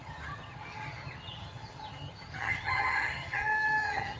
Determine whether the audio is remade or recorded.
remade